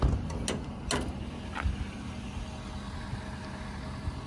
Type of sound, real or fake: real